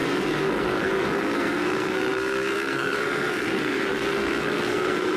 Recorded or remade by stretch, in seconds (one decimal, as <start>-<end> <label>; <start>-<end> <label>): 0.0-5.2 remade

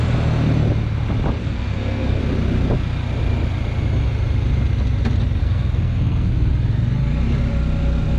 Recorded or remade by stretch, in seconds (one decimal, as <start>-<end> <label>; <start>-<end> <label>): 0.0-1.4 recorded; 1.4-2.2 remade; 2.2-5.4 recorded; 5.4-6.5 remade; 6.5-8.2 recorded

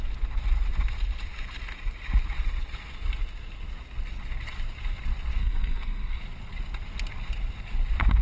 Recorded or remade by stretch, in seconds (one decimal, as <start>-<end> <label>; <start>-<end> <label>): 0.0-5.4 recorded; 5.4-6.2 remade; 6.2-8.2 recorded

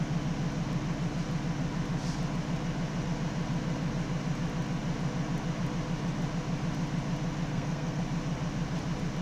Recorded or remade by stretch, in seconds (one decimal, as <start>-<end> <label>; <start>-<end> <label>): 0.0-7.5 recorded; 7.5-8.0 remade; 8.0-9.2 recorded

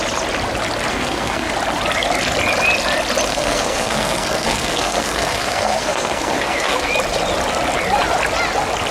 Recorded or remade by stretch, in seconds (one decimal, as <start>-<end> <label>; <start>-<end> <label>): 0.0-0.9 recorded; 0.9-1.5 remade; 1.5-3.3 recorded; 3.3-6.9 remade; 6.9-8.9 recorded

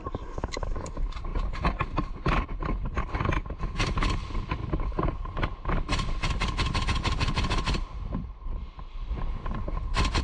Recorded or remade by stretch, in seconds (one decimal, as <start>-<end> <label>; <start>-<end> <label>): 0.0-10.2 recorded

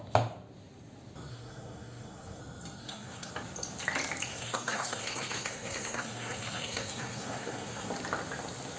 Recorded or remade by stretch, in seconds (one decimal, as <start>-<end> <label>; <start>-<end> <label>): 0.0-1.3 recorded; 1.3-2.4 remade; 2.4-2.8 recorded; 2.8-3.3 remade; 3.3-4.3 recorded; 4.3-7.9 remade; 7.9-8.8 recorded

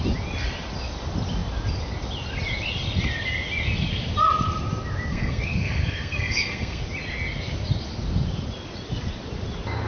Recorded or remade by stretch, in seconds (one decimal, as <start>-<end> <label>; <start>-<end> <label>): 0.0-5.1 recorded; 5.1-6.8 remade; 6.8-9.9 recorded